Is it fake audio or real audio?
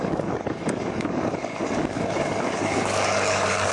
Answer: fake